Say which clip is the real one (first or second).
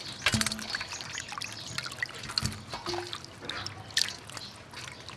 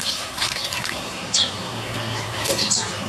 first